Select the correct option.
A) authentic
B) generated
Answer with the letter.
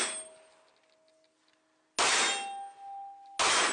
A